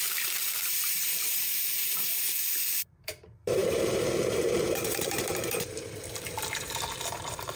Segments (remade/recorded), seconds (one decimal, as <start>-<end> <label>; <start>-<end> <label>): 0.0-7.6 remade